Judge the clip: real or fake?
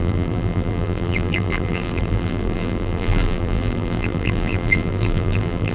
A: fake